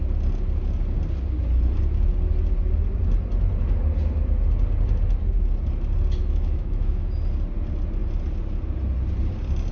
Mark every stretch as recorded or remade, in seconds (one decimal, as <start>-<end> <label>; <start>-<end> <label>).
0.0-6.2 recorded; 6.2-7.1 remade; 7.1-9.7 recorded